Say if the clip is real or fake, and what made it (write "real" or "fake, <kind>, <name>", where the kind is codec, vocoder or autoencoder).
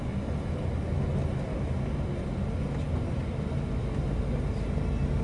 real